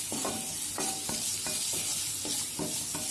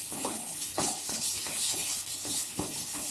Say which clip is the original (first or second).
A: first